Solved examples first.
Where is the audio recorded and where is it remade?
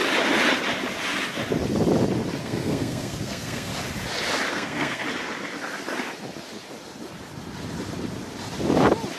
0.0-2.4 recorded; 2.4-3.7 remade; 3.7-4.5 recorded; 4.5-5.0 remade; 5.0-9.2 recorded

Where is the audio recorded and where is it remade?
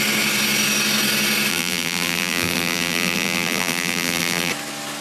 0.0-1.5 recorded; 1.5-4.5 remade; 4.5-5.0 recorded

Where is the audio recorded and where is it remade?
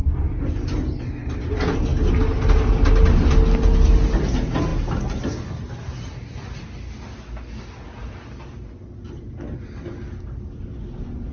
0.0-11.3 recorded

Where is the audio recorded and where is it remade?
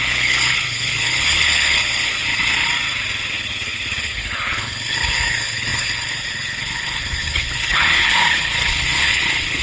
0.0-2.7 remade; 2.7-3.3 recorded; 3.3-9.6 remade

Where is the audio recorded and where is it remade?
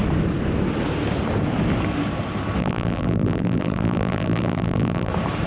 0.0-2.6 recorded; 2.6-5.1 remade; 5.1-5.5 recorded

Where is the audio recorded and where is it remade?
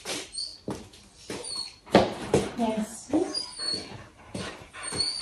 0.0-2.9 recorded; 2.9-3.4 remade; 3.4-5.2 recorded